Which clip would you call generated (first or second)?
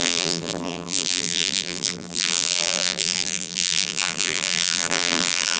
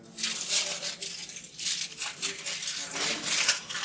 first